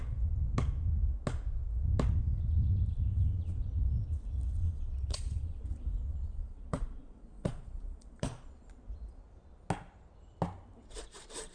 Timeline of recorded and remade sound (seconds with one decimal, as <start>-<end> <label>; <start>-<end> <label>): 0.0-4.6 recorded; 4.6-5.6 remade; 5.6-6.1 recorded; 6.1-8.7 remade; 8.7-11.5 recorded